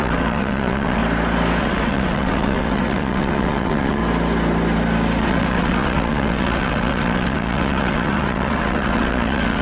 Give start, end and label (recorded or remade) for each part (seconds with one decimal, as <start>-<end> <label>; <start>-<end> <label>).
0.0-1.0 remade; 1.0-1.6 recorded; 1.6-4.0 remade; 4.0-5.2 recorded; 5.2-9.6 remade

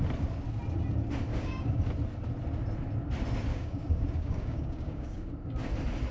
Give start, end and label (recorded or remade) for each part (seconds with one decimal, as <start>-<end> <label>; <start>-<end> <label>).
0.0-1.3 recorded; 1.3-1.8 remade; 1.8-3.5 recorded; 3.5-5.3 remade; 5.3-6.1 recorded

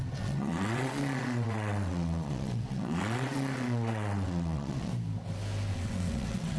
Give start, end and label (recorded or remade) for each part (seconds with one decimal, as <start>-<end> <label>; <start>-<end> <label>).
0.0-4.9 remade; 4.9-5.7 recorded; 5.7-6.6 remade

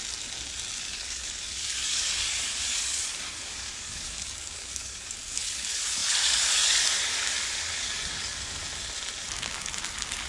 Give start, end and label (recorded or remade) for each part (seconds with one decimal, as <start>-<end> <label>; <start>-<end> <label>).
0.0-0.8 recorded; 0.8-8.6 remade; 8.6-9.5 recorded; 9.5-10.3 remade

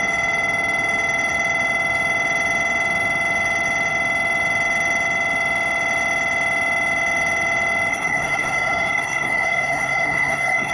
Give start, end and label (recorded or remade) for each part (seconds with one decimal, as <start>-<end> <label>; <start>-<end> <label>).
0.0-7.9 recorded; 7.9-10.7 remade